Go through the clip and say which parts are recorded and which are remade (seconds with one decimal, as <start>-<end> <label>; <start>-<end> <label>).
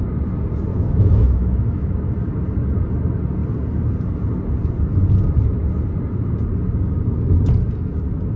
0.0-0.7 recorded; 0.7-2.1 remade; 2.1-8.4 recorded